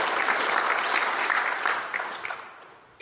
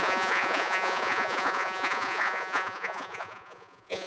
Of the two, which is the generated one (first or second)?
second